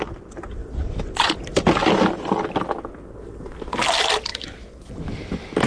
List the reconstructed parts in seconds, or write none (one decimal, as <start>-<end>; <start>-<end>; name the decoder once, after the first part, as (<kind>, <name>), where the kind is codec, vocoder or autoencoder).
4.3-4.9 (autoencoder, DAC-VAE)